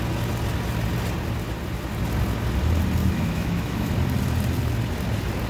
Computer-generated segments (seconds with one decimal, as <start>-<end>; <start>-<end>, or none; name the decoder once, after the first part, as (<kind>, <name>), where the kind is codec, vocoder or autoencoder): 3.0-3.9 (autoencoder, DAC-VAE)